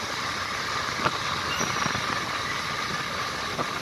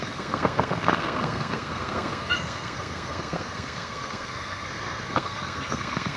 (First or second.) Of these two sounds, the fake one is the second